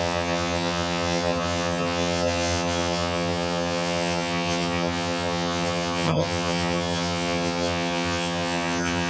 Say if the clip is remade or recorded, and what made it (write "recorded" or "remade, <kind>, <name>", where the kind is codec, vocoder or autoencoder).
remade, vocoder, HiFi-GAN